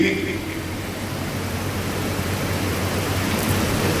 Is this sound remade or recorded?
remade